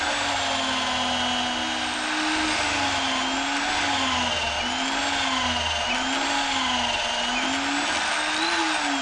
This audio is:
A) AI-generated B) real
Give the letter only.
B